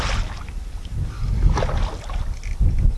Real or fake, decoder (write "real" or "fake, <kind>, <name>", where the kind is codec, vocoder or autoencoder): real